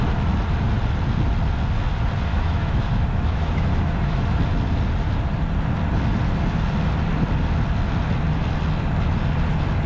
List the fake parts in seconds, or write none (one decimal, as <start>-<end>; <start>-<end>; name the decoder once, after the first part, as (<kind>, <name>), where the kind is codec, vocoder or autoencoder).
2.3-4.4 (autoencoder, DAC-VAE)